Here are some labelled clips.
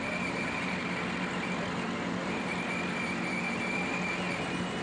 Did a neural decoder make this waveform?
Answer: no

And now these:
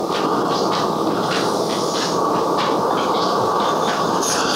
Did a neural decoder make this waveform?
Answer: no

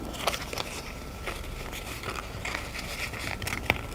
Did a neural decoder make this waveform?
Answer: no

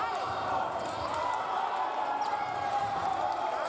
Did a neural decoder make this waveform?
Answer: yes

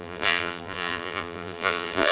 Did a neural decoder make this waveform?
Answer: yes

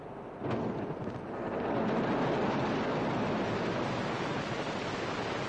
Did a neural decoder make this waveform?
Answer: no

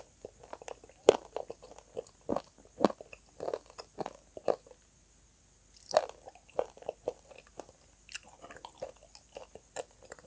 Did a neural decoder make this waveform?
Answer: yes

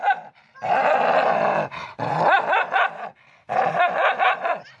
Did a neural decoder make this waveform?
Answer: no